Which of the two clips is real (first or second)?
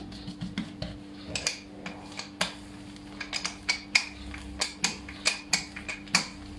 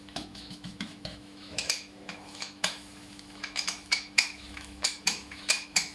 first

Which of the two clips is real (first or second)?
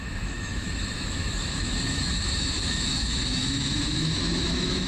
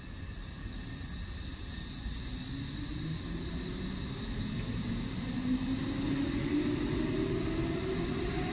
second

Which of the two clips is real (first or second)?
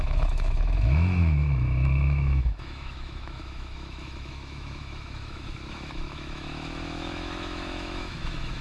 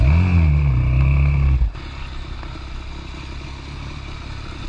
second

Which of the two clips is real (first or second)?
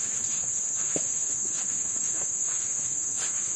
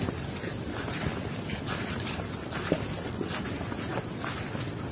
second